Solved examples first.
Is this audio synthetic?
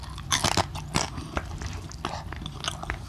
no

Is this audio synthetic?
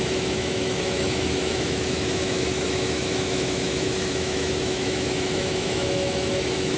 yes